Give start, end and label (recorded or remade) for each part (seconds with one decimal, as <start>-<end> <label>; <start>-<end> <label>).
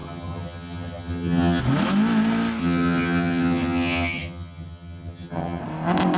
0.0-1.6 remade; 1.6-2.6 recorded; 2.6-5.6 remade; 5.6-6.2 recorded